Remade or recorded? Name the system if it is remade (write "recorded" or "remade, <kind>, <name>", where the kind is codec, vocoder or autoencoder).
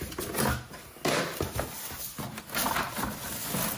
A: recorded